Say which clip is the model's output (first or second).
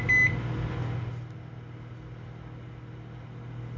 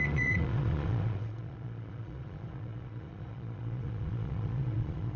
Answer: second